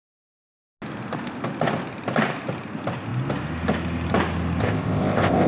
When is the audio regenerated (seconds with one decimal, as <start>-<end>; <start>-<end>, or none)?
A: 4.6-5.5